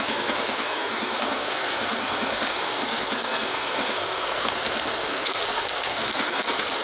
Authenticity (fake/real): fake